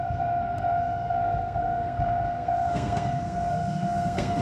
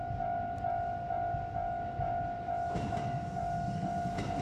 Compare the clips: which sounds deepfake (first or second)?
first